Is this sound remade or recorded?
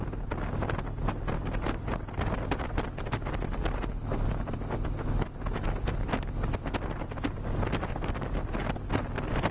recorded